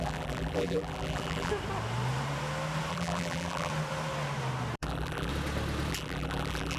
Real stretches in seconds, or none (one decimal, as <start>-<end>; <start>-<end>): 1.5-2.9; 3.7-4.8; 5.3-5.9